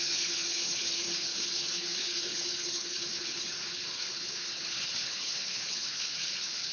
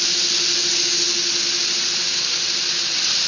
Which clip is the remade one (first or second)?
first